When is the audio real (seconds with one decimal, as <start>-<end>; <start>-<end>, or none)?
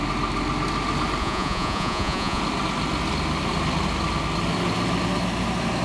0.0-1.2; 2.4-5.8